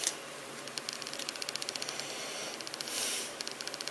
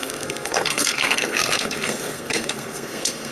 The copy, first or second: second